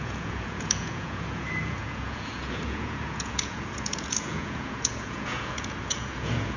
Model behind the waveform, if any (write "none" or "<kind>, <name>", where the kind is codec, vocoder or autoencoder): vocoder, Vocos